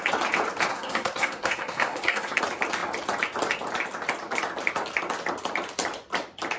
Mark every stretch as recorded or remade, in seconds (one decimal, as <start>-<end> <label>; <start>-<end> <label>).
0.0-0.7 recorded; 0.7-2.4 remade; 2.4-6.6 recorded